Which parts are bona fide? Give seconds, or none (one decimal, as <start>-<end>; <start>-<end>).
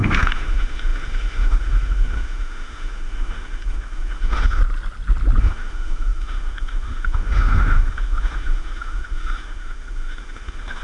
4.6-5.4